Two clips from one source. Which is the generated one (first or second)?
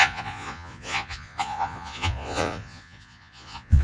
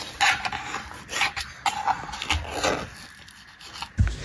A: first